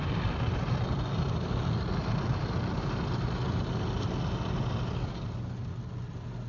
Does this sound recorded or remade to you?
recorded